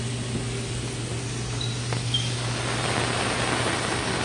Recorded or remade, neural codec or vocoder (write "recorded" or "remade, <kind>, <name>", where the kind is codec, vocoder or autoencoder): recorded